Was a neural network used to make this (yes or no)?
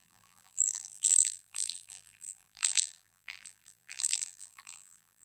yes